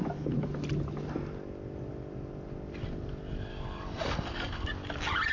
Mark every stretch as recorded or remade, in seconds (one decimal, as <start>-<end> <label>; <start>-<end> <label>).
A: 0.0-3.5 recorded; 3.5-4.7 remade; 4.7-5.3 recorded